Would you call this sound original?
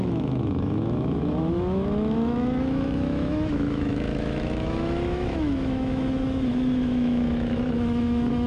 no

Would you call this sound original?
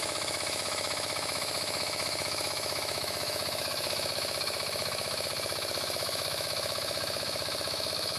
no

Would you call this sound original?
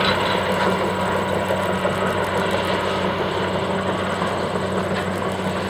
yes